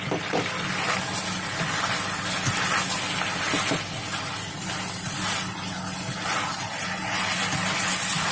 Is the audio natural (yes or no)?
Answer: yes